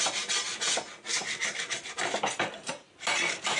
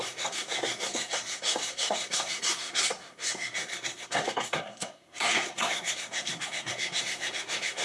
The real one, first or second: first